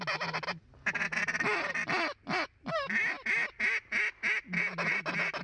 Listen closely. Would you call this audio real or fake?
real